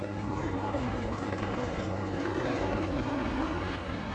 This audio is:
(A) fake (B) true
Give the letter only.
A